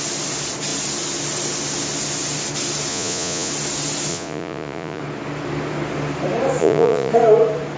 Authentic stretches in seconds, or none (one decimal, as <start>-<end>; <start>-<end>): 0.0-2.9; 3.5-4.1; 5.0-6.6; 7.1-7.8

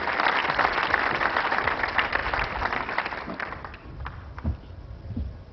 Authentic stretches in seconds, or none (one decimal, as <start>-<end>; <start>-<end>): 0.0-5.5

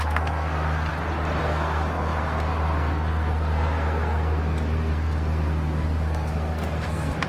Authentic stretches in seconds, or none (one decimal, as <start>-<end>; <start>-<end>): 0.9-1.4

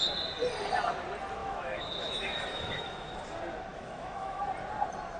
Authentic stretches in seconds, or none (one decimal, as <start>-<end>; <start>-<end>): 0.0-1.4; 3.2-3.7; 4.4-5.2

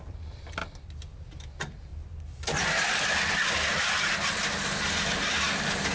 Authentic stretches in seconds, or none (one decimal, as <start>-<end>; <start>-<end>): 0.6-1.2; 1.9-5.3

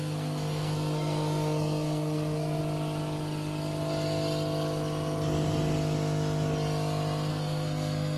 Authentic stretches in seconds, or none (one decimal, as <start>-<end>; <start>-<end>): 2.6-7.3

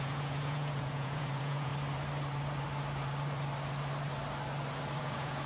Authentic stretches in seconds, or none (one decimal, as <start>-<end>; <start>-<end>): 1.7-5.0

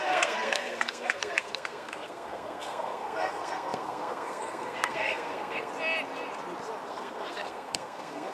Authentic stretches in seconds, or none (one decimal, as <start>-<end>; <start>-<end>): 5.7-6.9